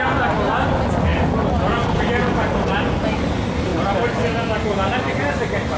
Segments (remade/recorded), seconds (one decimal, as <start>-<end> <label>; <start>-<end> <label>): 0.0-5.8 recorded